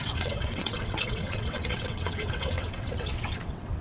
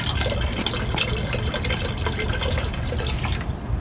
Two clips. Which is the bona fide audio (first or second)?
second